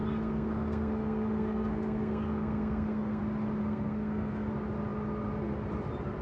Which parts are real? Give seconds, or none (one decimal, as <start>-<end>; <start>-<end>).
3.2-3.6; 4.5-6.2